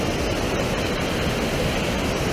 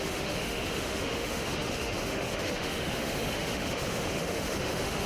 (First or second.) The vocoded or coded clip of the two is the second